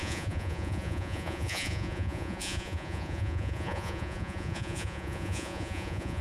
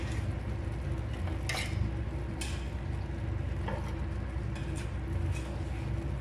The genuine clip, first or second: second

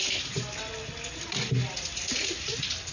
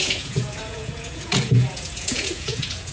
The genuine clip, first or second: first